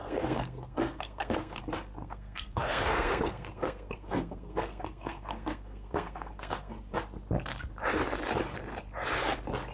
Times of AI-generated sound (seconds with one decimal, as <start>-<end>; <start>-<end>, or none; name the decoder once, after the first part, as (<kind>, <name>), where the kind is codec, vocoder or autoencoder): 0.0-1.6 (codec, SNAC); 2.0-6.7

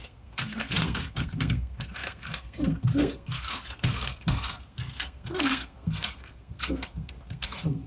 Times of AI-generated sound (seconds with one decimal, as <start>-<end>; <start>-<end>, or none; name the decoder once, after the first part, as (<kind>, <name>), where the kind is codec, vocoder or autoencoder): 0.0-7.9 (codec, SNAC)

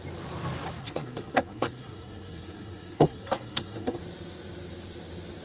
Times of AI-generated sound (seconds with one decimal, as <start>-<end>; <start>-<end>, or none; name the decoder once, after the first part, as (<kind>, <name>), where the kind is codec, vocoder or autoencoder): 0.8-4.0 (codec, SNAC)

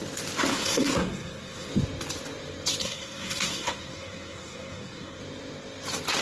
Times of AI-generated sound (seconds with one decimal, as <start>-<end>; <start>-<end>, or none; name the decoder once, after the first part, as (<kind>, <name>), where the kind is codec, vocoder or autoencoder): 0.5-1.7 (codec, SNAC); 2.8-5.2

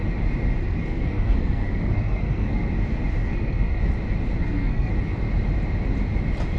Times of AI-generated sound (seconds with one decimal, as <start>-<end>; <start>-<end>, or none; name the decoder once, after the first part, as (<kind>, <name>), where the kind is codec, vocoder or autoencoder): 0.6-2.7 (codec, SNAC); 3.2-3.8; 4.4-4.9